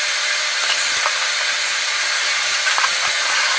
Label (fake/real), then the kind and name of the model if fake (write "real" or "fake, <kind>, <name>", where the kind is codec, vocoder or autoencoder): fake, vocoder, BigVGAN v2